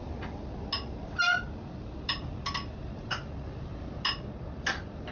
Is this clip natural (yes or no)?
yes